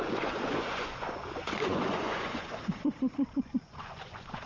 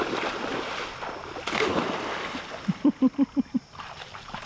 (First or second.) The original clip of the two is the second